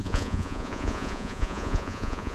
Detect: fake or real fake